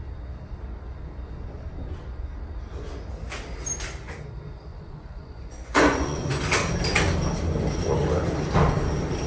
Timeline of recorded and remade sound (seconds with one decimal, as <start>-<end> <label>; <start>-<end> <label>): 0.0-4.7 recorded; 4.7-6.4 remade; 6.4-9.3 recorded